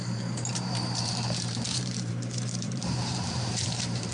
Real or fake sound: fake